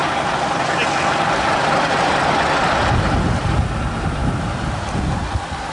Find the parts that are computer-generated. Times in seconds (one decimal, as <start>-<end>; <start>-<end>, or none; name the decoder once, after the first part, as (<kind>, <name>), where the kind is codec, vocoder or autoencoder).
none